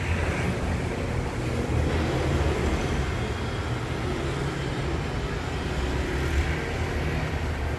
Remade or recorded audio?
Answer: recorded